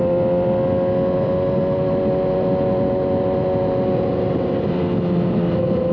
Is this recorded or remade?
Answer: recorded